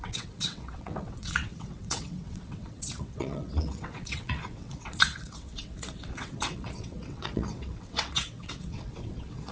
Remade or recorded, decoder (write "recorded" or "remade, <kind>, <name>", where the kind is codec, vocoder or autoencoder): remade, vocoder, WaveNeXt